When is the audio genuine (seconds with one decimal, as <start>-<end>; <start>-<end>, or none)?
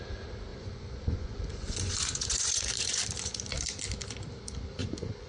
0.0-0.5; 3.0-4.8